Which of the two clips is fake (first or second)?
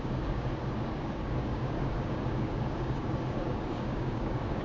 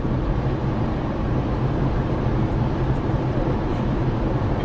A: first